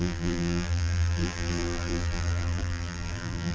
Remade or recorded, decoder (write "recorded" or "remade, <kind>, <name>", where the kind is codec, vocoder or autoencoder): remade, vocoder, BigVGAN v2